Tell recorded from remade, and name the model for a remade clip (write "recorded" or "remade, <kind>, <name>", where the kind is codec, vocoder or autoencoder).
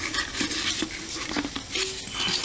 recorded